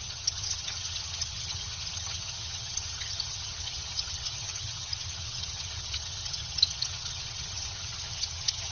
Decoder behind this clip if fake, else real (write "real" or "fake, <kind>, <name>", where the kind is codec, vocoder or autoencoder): fake, vocoder, HiFi-GAN